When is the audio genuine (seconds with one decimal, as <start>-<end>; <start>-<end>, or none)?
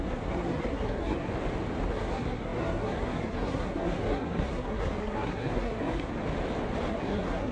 1.3-1.9; 6.1-6.9